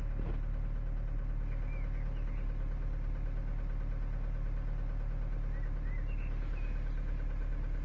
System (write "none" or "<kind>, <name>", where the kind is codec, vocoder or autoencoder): none